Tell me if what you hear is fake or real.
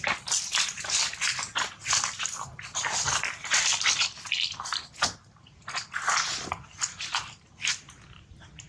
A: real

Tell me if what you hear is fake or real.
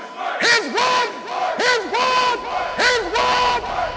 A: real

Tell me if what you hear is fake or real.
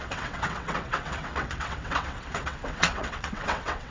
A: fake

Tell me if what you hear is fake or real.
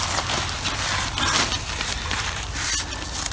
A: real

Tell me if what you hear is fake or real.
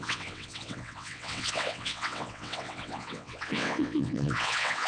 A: fake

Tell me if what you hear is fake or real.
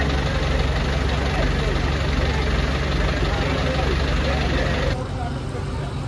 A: real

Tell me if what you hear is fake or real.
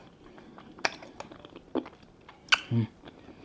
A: real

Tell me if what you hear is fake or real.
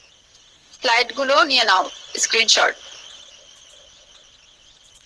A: fake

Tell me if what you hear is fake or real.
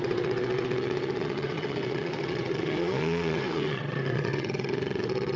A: fake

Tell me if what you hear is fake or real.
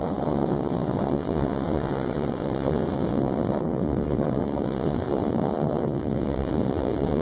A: fake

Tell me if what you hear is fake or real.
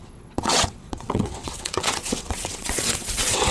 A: fake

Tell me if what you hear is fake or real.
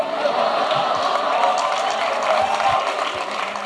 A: real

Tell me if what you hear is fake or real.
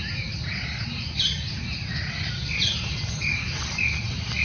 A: real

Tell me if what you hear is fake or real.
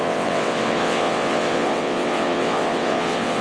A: fake